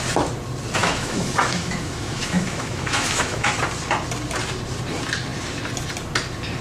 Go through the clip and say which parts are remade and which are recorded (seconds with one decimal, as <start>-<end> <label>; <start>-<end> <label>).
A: 0.0-0.8 recorded; 0.8-3.5 remade; 3.5-6.6 recorded